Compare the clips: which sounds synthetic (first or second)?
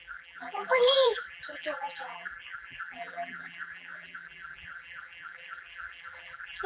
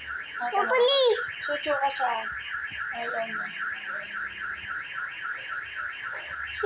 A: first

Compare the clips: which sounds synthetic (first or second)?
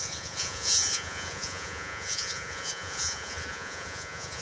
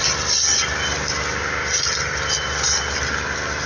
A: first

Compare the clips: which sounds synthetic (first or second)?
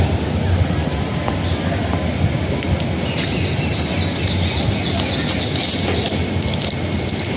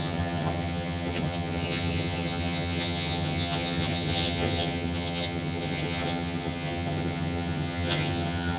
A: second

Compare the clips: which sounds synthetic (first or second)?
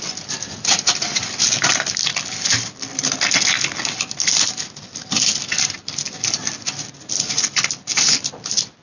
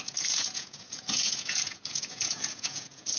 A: second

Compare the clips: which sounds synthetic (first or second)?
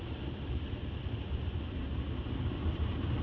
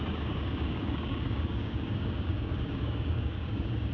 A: second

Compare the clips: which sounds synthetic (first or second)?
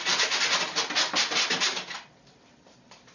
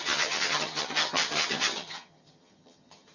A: second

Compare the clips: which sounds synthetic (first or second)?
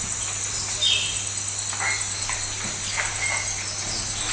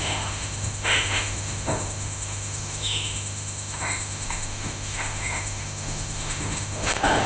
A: second